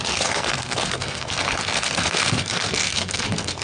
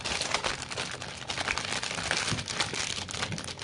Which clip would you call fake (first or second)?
first